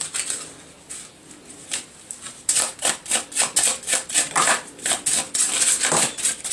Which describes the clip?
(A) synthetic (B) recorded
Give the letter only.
B